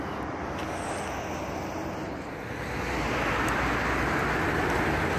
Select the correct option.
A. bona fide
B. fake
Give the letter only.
A